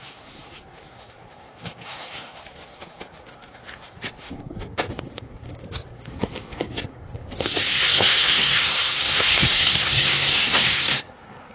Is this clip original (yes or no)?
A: no